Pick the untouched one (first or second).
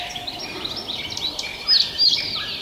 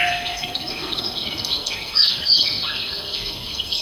first